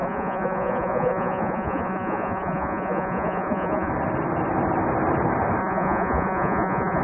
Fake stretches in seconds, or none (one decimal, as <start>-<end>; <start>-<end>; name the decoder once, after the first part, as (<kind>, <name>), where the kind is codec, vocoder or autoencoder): 0.0-3.9 (vocoder, Vocos); 5.6-7.0